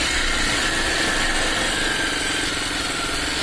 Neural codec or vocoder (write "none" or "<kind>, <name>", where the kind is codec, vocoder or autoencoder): none